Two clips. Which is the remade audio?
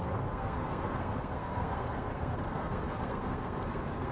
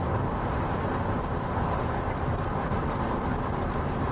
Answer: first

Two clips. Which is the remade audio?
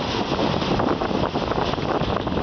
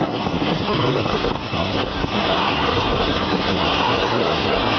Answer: second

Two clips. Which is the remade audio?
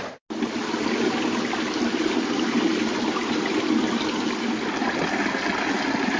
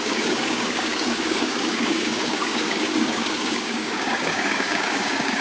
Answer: second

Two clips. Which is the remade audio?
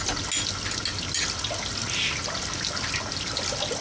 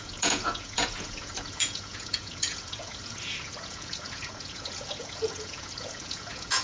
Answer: second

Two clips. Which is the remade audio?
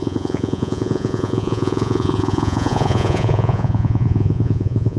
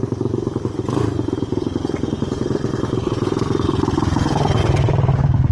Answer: first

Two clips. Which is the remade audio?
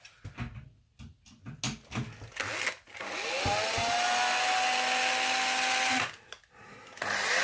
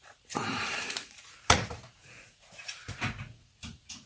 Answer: second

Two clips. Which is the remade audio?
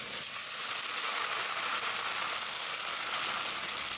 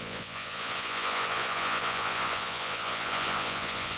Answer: second